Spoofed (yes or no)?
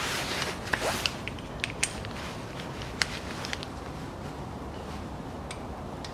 no